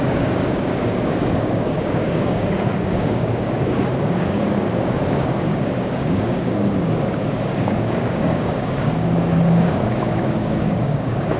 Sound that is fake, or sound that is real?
fake